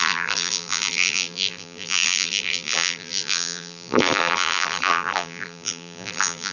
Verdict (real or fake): fake